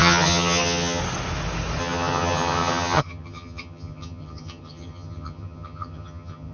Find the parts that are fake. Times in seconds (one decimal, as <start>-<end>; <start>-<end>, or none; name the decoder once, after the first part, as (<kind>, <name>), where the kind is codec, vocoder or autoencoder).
0.0-1.0 (vocoder, HiFi-GAN); 1.8-6.5